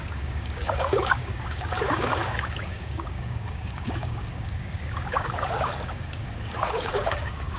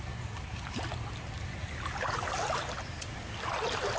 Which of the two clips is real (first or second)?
second